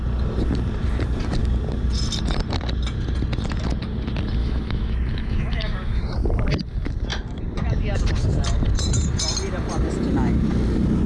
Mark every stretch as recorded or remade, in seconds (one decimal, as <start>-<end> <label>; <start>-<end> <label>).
0.0-4.4 recorded; 4.4-6.0 remade; 6.0-11.1 recorded